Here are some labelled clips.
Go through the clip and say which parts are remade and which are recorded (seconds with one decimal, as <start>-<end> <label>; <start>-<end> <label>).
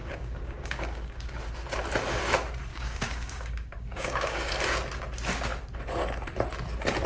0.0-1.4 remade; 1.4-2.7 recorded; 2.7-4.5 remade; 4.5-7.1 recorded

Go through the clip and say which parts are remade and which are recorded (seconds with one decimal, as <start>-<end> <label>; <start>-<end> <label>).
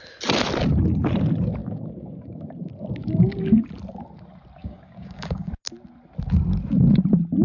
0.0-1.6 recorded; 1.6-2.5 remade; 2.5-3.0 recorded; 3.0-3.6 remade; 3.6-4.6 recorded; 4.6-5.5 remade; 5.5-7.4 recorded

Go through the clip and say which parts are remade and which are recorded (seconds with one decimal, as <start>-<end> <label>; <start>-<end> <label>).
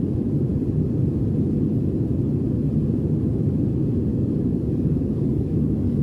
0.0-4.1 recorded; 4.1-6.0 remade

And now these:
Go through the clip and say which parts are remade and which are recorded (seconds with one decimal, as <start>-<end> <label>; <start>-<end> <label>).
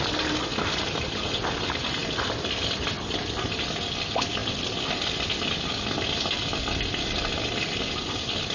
0.0-8.5 recorded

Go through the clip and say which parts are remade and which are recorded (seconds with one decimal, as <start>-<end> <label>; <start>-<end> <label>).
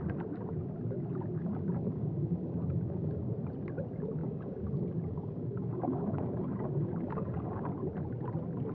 0.0-1.4 recorded; 1.4-3.3 remade; 3.3-4.2 recorded; 4.2-7.7 remade; 7.7-8.7 recorded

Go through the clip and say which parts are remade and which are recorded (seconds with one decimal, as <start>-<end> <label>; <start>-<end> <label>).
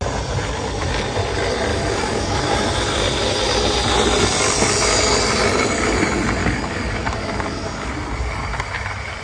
0.0-1.7 recorded; 1.7-2.5 remade; 2.5-6.4 recorded; 6.4-7.9 remade; 7.9-9.2 recorded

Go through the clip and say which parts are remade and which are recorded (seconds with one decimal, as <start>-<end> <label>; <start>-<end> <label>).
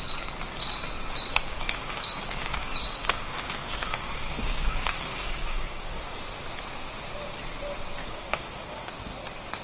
0.0-1.3 recorded; 1.3-6.2 remade; 6.2-8.0 recorded; 8.0-8.9 remade; 8.9-9.6 recorded